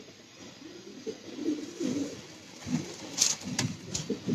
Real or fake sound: real